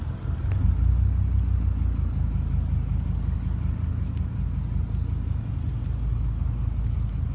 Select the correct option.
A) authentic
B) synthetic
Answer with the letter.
A